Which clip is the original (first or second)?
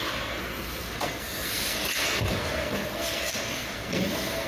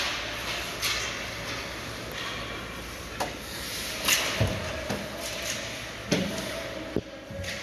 second